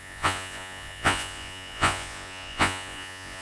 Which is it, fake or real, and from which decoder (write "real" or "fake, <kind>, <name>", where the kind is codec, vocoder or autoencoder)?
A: fake, vocoder, Vocos